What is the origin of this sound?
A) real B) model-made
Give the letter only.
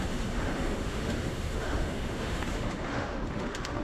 B